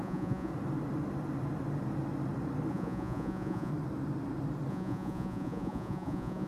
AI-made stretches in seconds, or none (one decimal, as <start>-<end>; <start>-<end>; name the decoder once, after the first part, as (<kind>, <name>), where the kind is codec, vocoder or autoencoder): 0.0-0.5 (vocoder, Vocos); 2.7-3.7; 4.7-6.5